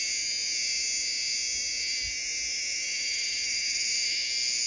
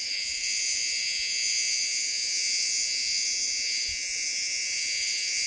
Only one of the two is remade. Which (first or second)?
second